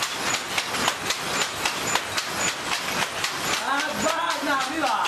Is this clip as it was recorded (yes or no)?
yes